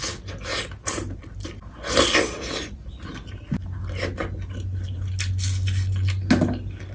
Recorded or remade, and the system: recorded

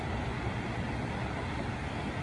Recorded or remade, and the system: recorded